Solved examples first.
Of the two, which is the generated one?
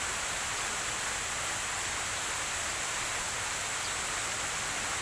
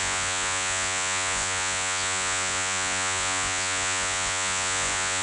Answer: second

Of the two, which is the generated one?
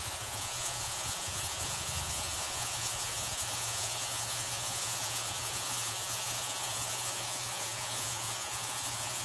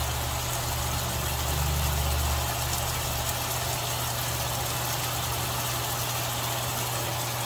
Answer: first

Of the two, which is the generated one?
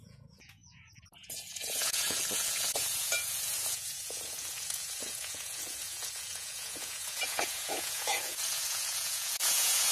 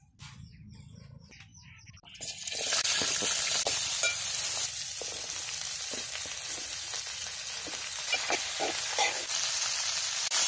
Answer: first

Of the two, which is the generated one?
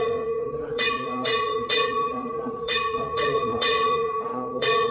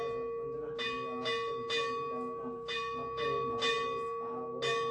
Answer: first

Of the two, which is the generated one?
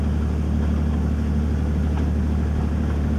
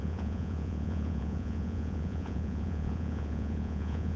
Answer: second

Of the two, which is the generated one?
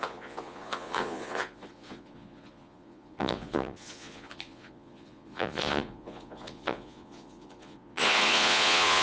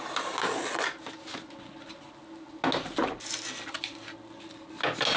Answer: first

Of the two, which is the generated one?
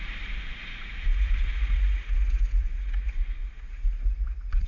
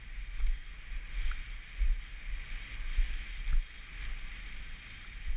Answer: first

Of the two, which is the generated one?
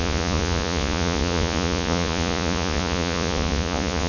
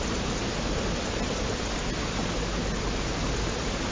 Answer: first